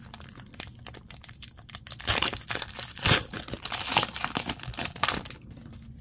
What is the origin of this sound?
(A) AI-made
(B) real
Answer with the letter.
B